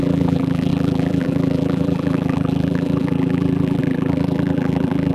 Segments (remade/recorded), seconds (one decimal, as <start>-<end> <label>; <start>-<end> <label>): 0.0-5.1 remade